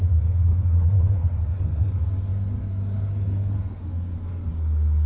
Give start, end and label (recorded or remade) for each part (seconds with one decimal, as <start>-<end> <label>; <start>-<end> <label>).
0.0-5.1 remade